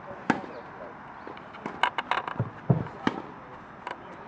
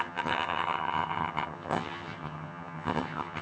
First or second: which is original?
first